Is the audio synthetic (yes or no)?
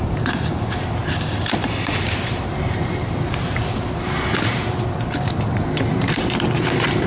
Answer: yes